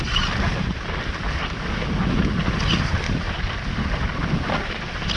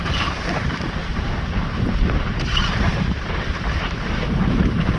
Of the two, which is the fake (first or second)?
second